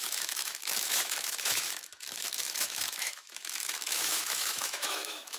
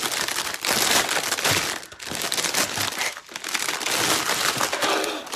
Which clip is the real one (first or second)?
second